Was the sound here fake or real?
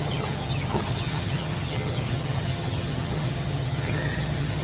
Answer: fake